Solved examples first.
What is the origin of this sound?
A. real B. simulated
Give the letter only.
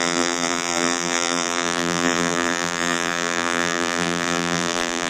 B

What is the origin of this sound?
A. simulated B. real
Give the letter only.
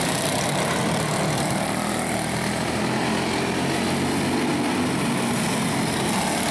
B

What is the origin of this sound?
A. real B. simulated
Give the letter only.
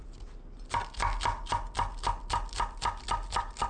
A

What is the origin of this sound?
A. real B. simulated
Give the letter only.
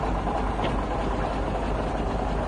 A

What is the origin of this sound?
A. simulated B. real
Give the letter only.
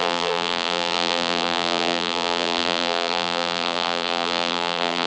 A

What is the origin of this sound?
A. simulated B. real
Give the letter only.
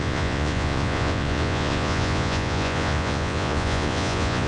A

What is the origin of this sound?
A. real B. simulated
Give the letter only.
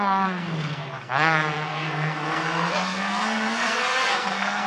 B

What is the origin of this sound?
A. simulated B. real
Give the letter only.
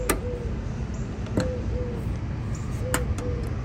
B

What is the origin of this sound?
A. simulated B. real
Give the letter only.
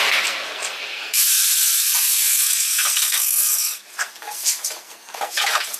A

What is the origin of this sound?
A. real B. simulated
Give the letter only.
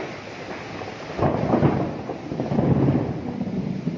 A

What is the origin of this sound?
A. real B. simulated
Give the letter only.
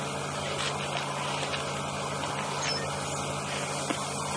A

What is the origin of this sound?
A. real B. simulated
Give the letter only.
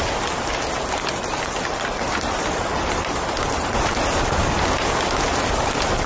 A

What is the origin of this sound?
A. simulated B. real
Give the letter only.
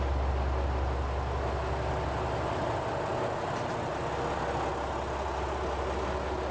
B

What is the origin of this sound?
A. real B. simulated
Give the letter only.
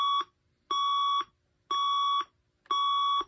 A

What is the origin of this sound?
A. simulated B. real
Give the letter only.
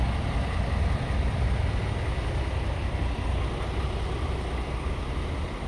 B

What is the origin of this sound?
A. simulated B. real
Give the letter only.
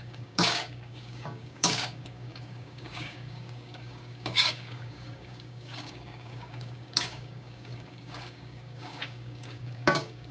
A